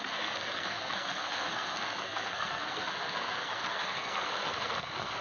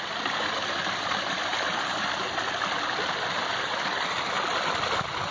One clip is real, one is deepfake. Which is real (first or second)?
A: second